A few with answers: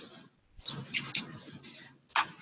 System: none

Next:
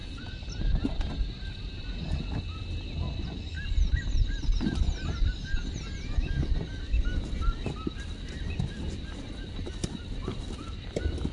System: none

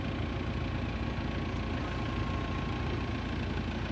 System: none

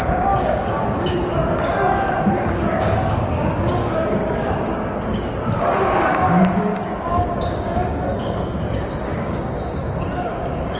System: codec, DAC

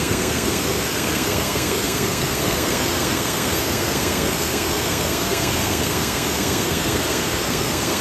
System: codec, SNAC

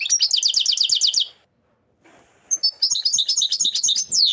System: none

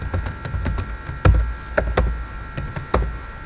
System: none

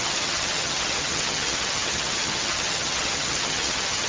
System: vocoder, HiFi-GAN